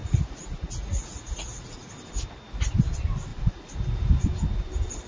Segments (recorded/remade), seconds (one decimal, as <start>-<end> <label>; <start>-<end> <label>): 0.0-1.9 remade; 1.9-3.3 recorded; 3.3-3.8 remade; 3.8-5.1 recorded